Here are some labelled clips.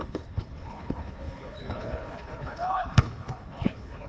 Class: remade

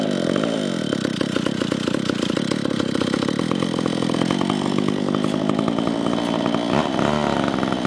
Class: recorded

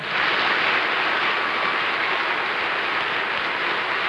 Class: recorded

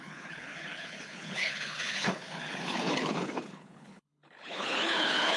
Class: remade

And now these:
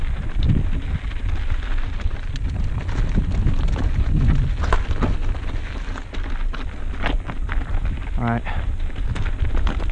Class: recorded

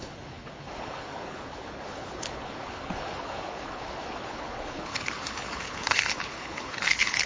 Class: remade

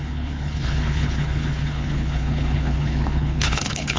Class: remade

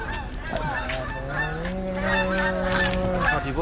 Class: recorded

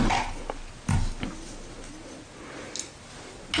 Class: recorded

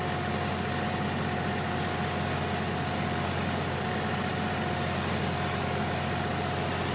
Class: recorded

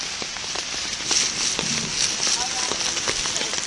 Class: recorded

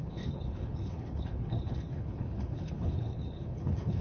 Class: remade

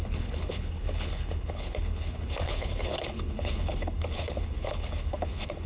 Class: remade